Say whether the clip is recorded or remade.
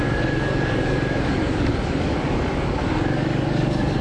remade